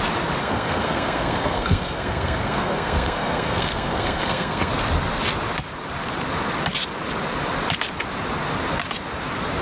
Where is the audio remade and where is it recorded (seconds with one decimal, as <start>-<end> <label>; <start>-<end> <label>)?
0.0-0.4 recorded; 0.4-4.7 remade; 4.7-9.6 recorded